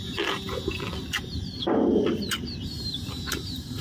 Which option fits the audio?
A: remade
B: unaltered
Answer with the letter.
A